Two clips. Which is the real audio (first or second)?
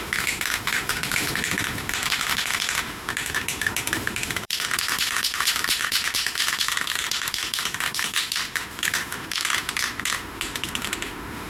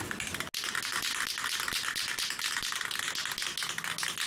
second